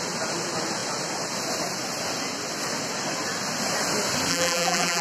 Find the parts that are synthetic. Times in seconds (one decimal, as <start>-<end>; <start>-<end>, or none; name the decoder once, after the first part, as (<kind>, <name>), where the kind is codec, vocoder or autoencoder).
4.3-5.0 (vocoder, BigVGAN v2)